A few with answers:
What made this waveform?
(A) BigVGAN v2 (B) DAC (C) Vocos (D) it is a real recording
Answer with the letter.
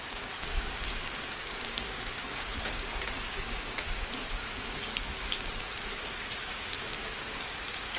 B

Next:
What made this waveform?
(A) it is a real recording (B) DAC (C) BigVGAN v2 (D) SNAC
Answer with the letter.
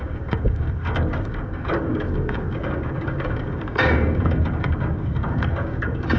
B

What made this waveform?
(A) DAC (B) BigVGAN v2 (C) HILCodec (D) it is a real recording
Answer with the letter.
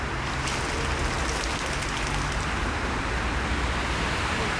D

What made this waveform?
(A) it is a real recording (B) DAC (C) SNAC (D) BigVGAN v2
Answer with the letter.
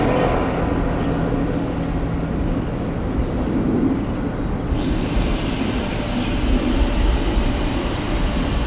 A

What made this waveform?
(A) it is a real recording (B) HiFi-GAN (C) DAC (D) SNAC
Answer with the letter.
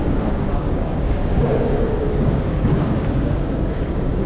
C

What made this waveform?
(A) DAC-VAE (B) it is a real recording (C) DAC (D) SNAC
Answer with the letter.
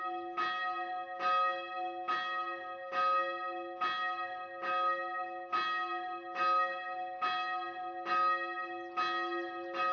B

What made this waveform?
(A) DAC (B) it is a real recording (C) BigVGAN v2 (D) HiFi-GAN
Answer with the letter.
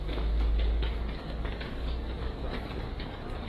A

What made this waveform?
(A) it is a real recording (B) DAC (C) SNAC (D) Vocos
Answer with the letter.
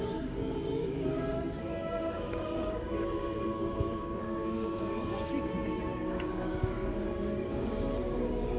B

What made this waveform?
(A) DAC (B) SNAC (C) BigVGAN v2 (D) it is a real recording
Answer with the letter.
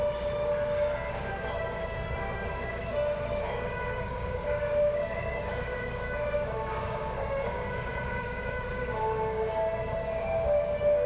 A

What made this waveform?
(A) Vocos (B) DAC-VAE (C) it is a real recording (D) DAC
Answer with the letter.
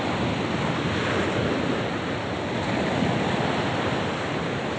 C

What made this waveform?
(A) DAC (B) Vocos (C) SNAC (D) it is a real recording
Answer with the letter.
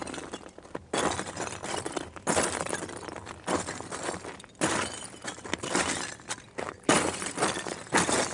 D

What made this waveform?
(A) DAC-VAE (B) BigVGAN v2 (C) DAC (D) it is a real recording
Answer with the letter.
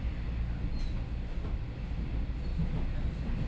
D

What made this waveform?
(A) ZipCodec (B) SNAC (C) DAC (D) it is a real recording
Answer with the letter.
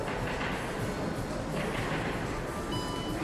D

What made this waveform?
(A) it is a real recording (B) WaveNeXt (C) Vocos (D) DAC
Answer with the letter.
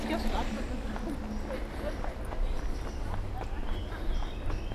A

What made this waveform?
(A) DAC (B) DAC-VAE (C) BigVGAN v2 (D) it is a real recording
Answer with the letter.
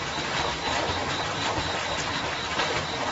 D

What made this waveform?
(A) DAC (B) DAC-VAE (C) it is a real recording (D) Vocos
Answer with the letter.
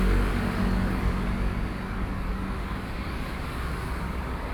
A